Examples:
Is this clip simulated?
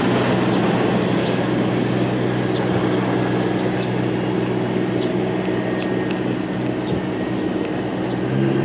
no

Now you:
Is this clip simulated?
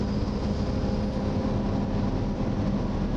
no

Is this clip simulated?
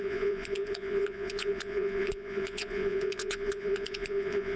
yes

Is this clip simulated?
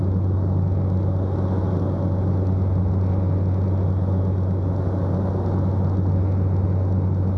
no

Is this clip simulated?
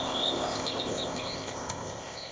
yes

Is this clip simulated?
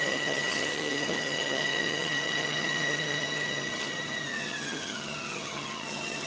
yes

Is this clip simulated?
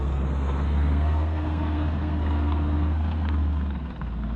yes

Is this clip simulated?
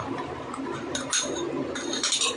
no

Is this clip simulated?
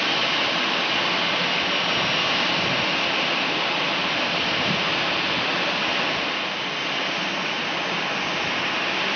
no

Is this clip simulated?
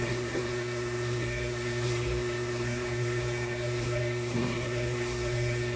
yes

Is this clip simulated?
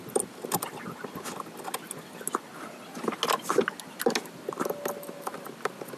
no